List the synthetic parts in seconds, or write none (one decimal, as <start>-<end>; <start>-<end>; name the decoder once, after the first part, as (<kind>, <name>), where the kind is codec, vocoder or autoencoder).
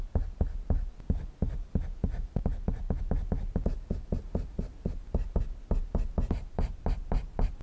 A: none